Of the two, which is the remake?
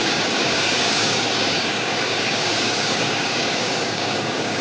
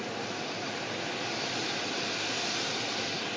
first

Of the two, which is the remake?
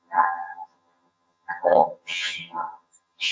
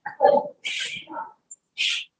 first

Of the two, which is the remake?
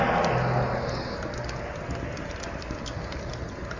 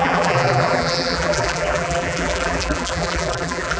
second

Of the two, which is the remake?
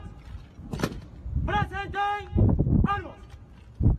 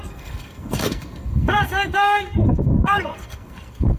second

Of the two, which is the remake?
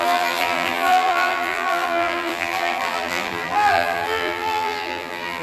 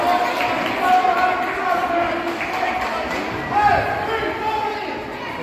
first